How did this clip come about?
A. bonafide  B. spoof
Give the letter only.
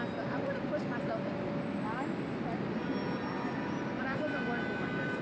A